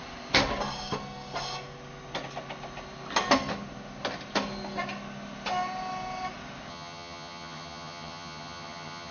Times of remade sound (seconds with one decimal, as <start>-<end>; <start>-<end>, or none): 6.7-9.1